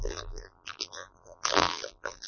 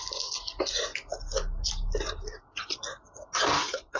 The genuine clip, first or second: second